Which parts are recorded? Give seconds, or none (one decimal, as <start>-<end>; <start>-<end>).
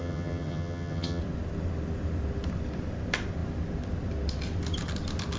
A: 1.2-5.4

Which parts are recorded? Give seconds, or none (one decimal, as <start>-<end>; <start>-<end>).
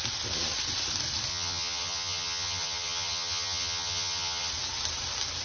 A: 0.0-1.3; 4.5-5.4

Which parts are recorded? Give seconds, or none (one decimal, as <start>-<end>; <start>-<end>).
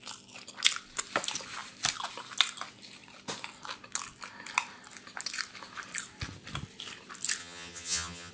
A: 0.0-7.4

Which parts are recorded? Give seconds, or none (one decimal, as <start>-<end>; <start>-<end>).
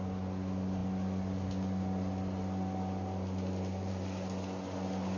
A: 0.0-5.2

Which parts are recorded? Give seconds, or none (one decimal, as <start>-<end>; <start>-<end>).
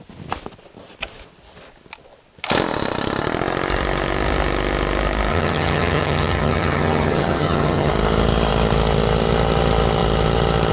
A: 0.0-5.3; 7.9-10.7